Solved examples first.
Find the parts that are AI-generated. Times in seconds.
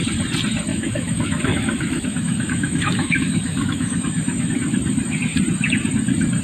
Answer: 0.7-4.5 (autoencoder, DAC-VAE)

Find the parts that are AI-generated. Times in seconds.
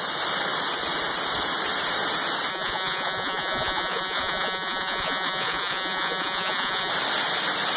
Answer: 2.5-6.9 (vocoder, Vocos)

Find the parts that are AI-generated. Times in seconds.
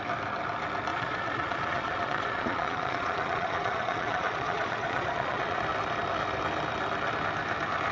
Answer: 0.9-5.6 (vocoder, Vocos)